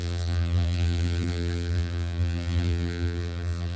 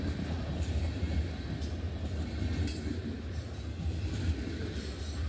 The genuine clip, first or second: second